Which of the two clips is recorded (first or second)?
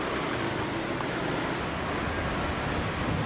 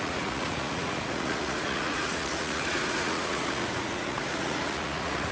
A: first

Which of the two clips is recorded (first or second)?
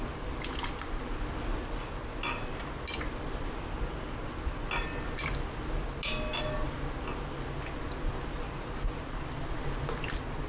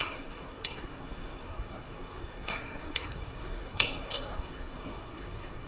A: first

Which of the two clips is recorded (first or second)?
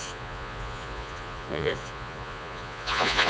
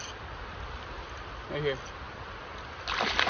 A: second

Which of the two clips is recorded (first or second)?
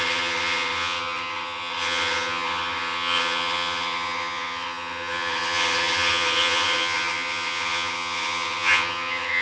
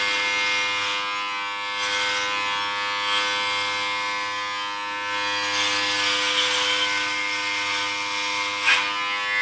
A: second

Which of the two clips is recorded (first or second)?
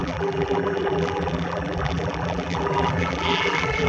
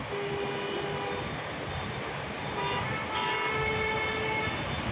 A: second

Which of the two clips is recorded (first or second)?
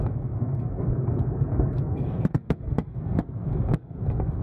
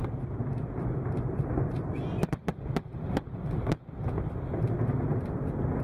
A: second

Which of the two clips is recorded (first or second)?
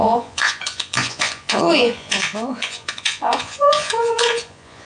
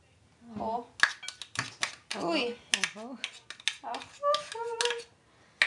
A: second